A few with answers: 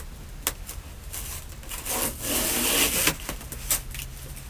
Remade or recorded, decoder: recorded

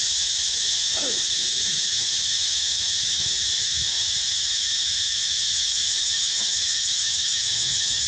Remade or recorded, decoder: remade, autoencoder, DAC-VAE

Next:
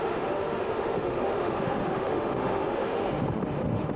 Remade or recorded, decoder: remade, autoencoder, DAC-VAE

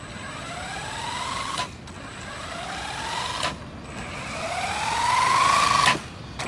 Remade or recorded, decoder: recorded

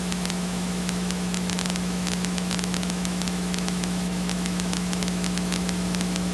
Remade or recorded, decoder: remade, autoencoder, DAC-VAE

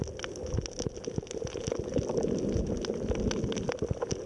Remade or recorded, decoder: recorded